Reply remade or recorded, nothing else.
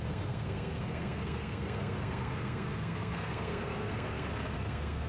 remade